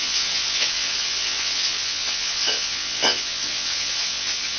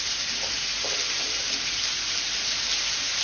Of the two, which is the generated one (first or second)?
first